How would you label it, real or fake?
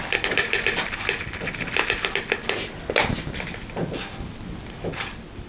real